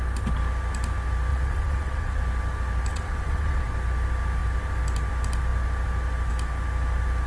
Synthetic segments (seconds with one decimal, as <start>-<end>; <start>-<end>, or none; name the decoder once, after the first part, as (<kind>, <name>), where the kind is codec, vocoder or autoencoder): 1.3-2.2 (vocoder, WaveNeXt); 2.9-3.7